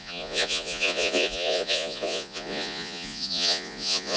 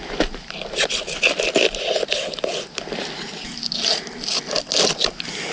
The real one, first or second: second